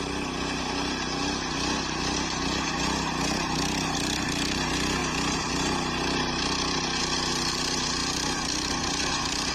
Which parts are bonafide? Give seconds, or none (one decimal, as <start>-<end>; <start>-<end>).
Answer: 0.0-9.5